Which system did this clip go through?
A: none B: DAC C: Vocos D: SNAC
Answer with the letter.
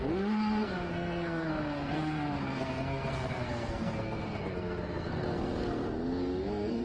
D